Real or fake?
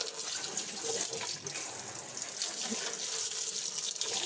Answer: real